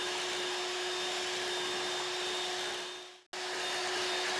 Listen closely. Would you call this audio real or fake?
real